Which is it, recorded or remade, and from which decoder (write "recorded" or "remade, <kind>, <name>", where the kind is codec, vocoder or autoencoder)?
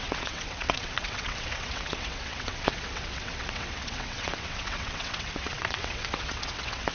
remade, vocoder, WaveNeXt